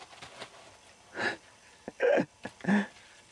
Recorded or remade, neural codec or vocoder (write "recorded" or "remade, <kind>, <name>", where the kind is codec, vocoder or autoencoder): recorded